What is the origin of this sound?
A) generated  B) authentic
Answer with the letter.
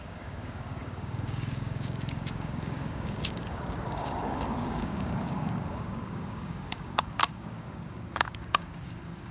A